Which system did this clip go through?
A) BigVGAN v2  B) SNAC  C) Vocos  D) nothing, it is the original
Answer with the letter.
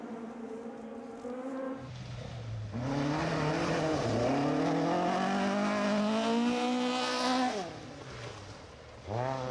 D